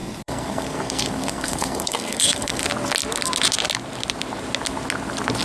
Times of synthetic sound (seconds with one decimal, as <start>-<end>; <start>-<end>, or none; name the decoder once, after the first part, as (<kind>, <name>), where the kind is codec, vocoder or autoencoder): 0.0-2.6 (codec, SNAC)